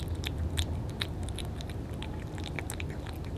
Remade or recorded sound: recorded